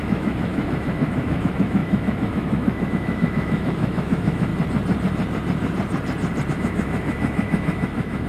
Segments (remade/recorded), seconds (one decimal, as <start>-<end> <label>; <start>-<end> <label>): 0.0-4.5 remade; 4.5-6.5 recorded; 6.5-8.3 remade